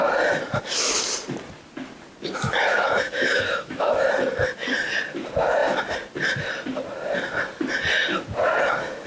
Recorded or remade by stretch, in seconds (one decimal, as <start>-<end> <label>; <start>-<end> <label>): 0.0-2.7 recorded; 2.7-4.1 remade; 4.1-9.1 recorded